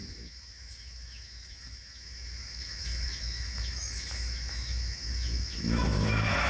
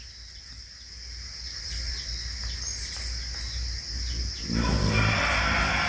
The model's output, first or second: first